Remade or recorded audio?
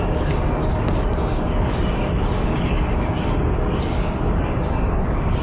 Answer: remade